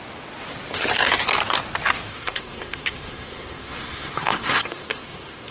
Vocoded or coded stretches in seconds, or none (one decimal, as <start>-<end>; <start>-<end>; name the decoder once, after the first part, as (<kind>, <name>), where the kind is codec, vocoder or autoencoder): 2.1-5.5 (codec, SNAC)